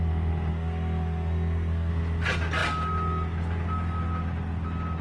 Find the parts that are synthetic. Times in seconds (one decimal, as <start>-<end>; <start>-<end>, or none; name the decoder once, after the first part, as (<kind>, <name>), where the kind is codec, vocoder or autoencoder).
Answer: 0.5-1.9 (codec, SNAC)